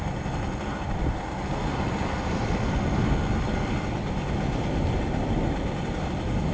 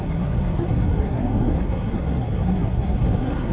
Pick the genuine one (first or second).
first